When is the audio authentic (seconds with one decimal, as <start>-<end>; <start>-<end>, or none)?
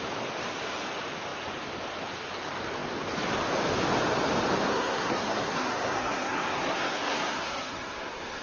0.0-4.7